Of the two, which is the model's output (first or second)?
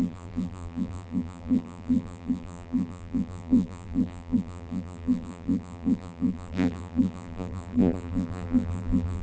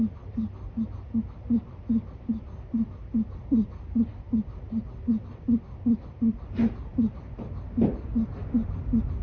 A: first